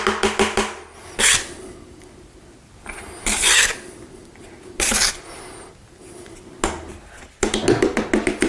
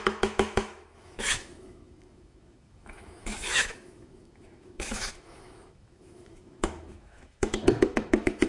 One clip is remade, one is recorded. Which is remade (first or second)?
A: second